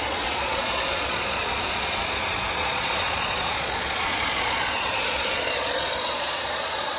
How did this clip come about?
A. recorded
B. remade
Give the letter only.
B